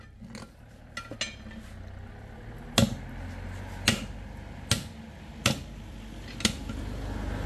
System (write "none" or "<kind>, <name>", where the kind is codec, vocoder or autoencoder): none